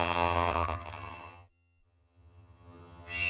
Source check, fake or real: fake